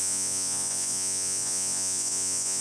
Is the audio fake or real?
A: fake